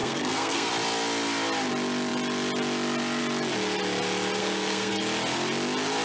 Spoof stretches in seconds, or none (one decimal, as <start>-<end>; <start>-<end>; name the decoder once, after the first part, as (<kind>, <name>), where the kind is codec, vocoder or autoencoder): 0.0-0.7 (codec, SNAC); 4.4-5.0